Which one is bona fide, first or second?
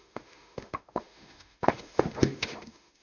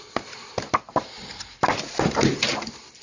second